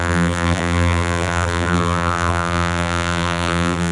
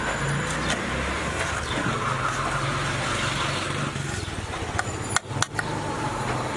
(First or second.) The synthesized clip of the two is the first